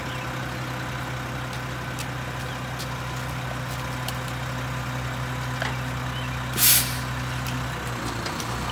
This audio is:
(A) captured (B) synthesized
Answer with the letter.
A